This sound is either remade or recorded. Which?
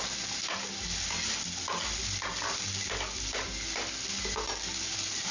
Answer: recorded